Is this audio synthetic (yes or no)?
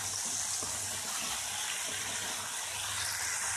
no